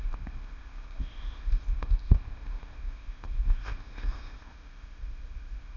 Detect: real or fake fake